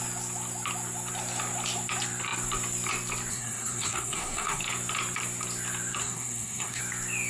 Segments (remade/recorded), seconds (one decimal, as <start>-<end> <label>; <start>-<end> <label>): 0.0-3.3 recorded; 3.3-4.6 remade; 4.6-6.0 recorded; 6.0-6.8 remade; 6.8-7.3 recorded